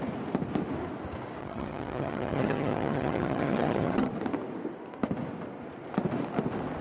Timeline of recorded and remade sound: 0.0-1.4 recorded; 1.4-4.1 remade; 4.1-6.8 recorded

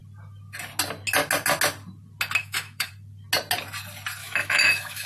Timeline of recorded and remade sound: 0.0-2.4 recorded; 2.4-2.9 remade; 2.9-4.2 recorded; 4.2-5.1 remade

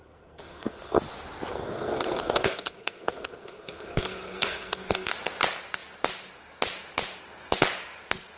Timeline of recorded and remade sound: 0.0-1.0 remade; 1.0-1.5 recorded; 1.5-5.1 remade; 5.1-8.4 recorded

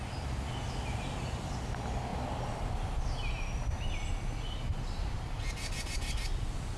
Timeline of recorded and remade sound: 0.0-6.8 recorded

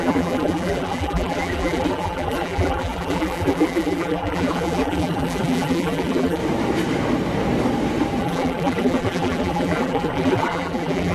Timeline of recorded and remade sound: 0.0-6.4 remade; 6.4-8.2 recorded; 8.2-11.1 remade